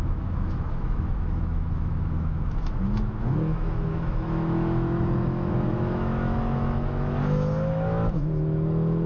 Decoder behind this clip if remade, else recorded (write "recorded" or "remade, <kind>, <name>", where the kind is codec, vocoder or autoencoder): remade, autoencoder, DAC-VAE